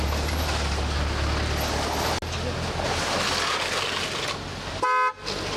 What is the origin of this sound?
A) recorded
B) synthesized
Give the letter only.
A